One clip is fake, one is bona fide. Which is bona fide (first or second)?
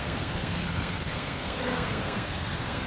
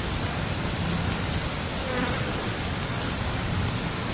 second